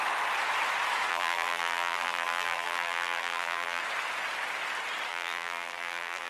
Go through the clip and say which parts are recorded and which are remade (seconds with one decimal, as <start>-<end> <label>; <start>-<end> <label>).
0.0-1.1 recorded; 1.1-3.8 remade; 3.8-5.1 recorded; 5.1-6.3 remade